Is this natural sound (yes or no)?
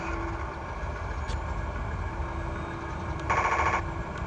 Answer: yes